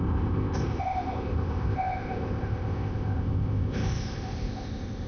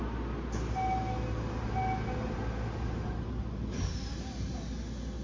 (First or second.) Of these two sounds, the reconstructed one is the first